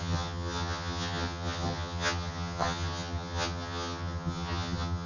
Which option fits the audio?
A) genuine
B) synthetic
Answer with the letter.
B